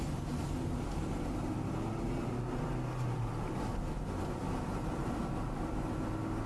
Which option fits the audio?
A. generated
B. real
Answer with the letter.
B